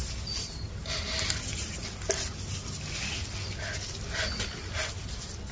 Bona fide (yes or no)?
yes